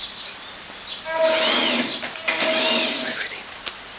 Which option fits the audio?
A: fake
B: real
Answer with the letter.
B